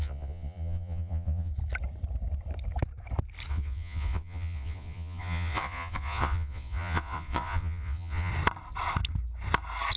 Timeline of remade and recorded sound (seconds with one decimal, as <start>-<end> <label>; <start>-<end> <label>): 0.0-1.5 remade; 1.5-3.5 recorded; 3.5-8.3 remade; 8.3-10.0 recorded